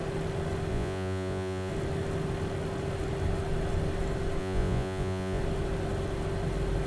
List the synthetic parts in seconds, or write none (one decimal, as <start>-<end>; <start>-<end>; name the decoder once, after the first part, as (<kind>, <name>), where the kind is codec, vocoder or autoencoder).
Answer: 0.7-1.7 (vocoder, Vocos); 4.4-5.4